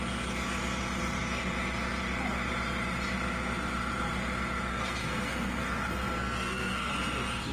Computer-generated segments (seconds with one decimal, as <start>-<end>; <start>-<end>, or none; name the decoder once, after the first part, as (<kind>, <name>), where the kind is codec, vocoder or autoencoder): 4.7-6.9 (codec, SNAC)